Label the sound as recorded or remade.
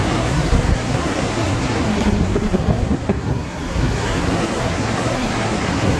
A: remade